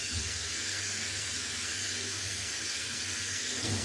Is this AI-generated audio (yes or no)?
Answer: yes